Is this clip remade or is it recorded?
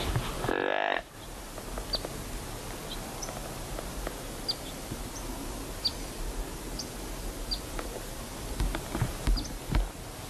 recorded